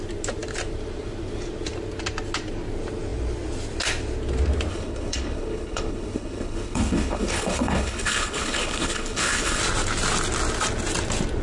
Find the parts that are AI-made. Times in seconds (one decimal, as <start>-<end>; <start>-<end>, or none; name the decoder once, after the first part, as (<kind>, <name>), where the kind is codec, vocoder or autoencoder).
4.7-9.6 (codec, HILCodec)